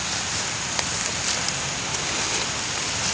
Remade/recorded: recorded